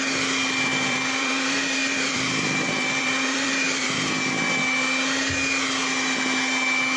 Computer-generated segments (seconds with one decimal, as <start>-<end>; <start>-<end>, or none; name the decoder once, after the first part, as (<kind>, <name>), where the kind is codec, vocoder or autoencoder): 0.7-4.1 (vocoder, BigVGAN v2)